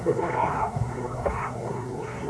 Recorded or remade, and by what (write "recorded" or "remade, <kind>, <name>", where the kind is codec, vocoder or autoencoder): remade, codec, SNAC